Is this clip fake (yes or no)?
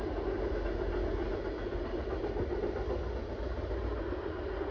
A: no